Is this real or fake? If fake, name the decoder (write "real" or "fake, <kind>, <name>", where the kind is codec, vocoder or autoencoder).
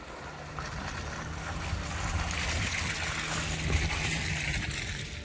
real